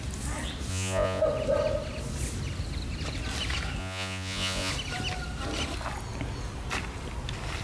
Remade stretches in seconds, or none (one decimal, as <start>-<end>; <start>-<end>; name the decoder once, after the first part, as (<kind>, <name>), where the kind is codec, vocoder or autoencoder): 0.7-1.2 (vocoder, Vocos); 3.8-4.7